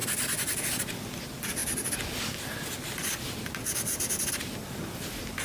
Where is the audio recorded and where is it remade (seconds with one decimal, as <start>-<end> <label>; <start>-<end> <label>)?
0.0-5.4 recorded

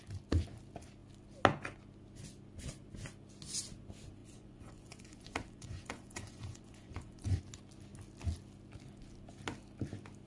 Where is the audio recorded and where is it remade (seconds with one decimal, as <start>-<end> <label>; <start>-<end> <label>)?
0.0-4.2 recorded; 4.2-7.4 remade; 7.4-10.3 recorded